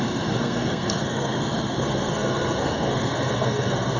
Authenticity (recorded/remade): remade